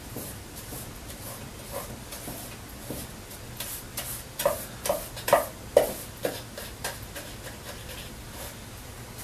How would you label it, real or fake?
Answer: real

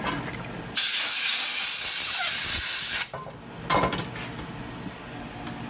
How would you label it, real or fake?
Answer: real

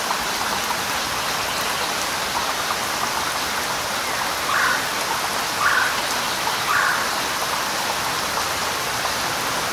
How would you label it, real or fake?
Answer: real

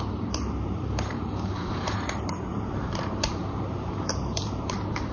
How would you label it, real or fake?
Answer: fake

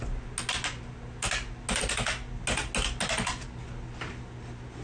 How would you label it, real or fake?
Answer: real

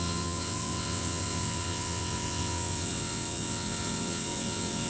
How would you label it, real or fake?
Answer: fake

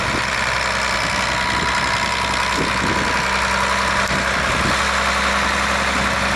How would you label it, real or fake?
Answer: real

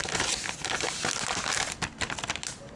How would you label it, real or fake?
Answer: real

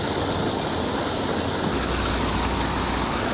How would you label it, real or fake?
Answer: real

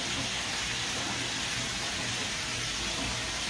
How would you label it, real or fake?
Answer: real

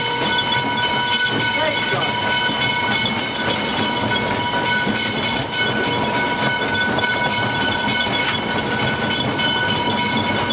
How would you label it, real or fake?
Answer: real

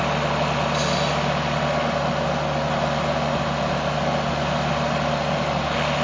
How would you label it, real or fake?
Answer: real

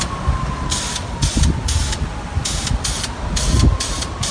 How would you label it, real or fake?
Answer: real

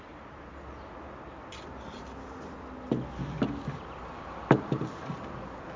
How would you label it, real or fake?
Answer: real